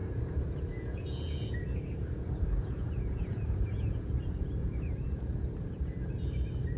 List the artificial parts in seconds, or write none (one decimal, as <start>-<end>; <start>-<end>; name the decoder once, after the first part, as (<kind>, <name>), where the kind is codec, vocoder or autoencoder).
0.0-4.1 (vocoder, Vocos); 4.6-6.1